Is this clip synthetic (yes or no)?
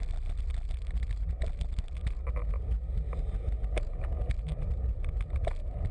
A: no